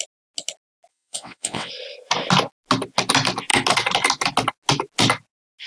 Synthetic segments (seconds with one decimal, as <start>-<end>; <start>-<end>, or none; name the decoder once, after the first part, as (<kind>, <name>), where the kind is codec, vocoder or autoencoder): 0.9-1.7 (vocoder, WaveNeXt)